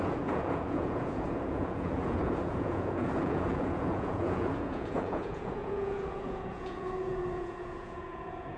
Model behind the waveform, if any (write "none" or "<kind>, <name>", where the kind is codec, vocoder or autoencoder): vocoder, Vocos